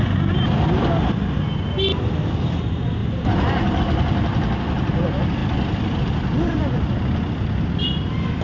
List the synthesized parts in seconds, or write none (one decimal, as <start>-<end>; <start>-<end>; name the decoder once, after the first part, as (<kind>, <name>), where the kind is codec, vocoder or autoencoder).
3.0-3.8 (vocoder, BigVGAN v2)